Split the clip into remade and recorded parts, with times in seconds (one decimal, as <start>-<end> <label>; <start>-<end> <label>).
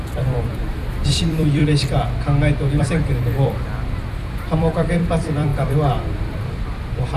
0.0-1.6 remade; 1.6-2.8 recorded; 2.8-7.2 remade